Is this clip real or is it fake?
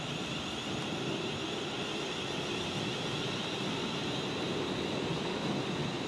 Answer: real